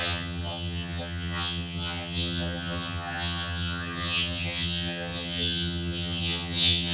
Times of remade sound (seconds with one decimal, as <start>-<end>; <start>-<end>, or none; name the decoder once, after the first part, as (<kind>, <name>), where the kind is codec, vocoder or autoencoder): 0.0-6.9 (vocoder, HiFi-GAN)